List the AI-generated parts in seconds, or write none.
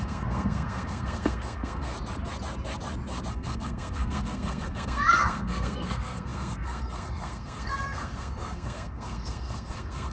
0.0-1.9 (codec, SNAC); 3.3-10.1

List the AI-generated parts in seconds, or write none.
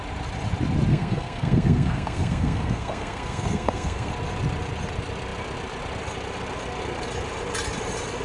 0.9-4.1 (codec, SNAC)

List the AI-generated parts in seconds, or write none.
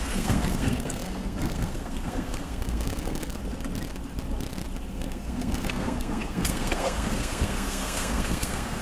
0.0-3.4 (codec, SNAC); 4.9-8.8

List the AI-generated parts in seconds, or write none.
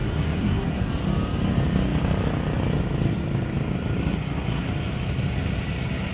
0.0-0.9 (codec, SNAC); 4.0-4.7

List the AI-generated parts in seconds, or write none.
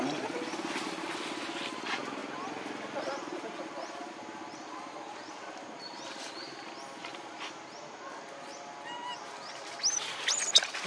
none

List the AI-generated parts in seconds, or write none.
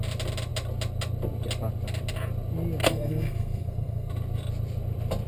2.8-4.1 (codec, SNAC)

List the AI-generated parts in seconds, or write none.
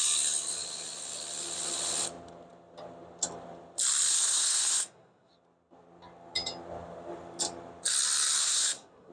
4.1-5.3 (codec, SNAC); 8.4-9.1